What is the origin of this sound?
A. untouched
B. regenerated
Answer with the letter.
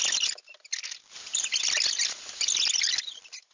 A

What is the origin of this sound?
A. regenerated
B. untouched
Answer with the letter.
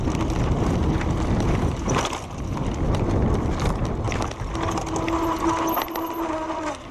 B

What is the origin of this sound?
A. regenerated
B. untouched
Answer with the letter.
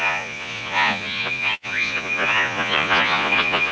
A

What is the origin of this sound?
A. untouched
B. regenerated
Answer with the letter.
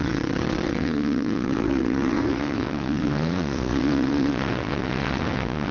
B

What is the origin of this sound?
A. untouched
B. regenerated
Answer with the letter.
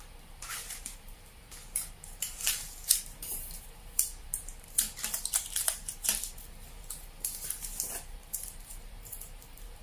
B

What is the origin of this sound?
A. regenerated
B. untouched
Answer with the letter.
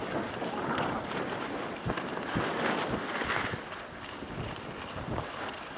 B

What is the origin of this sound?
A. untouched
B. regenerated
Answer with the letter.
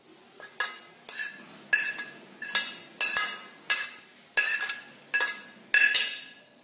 A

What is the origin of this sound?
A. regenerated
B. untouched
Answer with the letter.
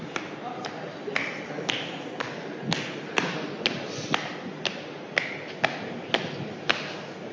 B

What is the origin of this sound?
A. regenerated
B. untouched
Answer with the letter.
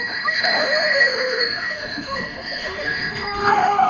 A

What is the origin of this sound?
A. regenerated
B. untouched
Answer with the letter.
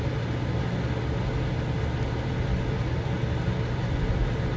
B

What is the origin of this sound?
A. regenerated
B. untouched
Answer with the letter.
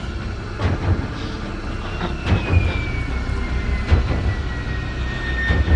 B